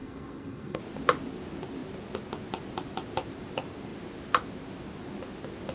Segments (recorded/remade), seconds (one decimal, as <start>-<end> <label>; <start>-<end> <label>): 0.0-0.8 remade; 0.8-5.7 recorded